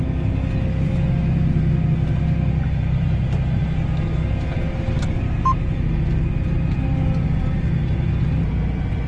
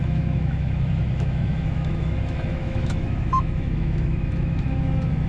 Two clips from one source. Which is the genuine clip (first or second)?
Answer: first